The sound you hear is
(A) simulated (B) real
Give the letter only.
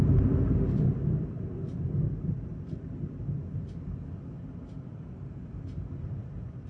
B